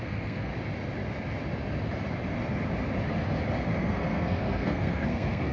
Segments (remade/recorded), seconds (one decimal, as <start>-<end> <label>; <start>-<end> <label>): 0.0-0.5 remade; 0.5-3.8 recorded; 3.8-5.5 remade